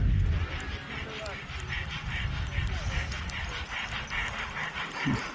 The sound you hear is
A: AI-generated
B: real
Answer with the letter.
B